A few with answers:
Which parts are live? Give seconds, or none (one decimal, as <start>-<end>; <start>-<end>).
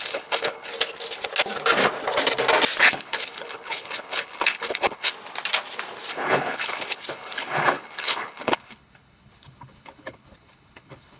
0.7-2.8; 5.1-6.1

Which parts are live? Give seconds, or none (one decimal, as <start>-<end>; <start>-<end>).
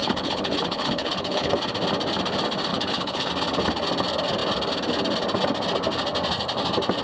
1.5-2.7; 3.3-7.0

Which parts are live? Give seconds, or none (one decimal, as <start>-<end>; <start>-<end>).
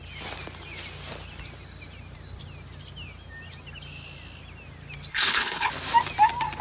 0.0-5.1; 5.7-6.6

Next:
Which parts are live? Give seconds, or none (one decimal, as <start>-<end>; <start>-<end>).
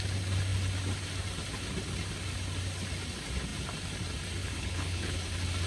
0.0-4.4; 5.2-5.7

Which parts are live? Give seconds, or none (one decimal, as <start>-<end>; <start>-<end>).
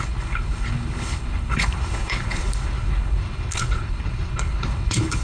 none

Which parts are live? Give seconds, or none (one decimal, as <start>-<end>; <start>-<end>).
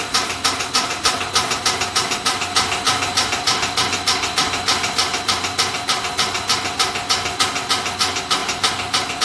0.0-9.2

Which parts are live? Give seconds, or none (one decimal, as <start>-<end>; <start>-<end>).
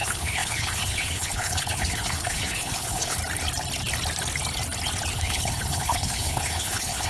3.2-5.1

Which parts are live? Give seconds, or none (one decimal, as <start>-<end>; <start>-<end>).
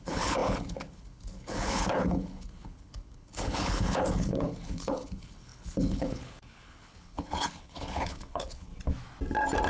8.7-9.7